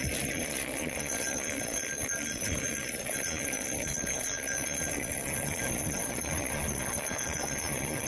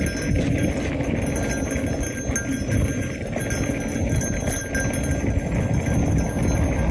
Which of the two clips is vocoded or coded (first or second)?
first